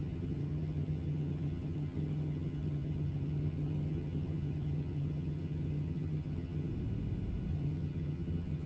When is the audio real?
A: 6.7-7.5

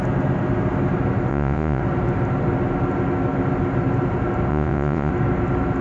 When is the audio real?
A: 0.0-1.3; 1.8-4.5; 5.1-5.8

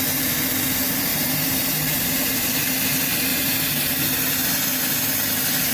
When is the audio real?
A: 0.0-1.1; 2.3-3.3; 4.0-5.7